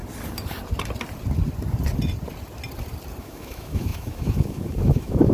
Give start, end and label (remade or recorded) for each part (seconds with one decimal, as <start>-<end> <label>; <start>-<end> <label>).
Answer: 0.0-3.2 recorded; 3.2-5.3 remade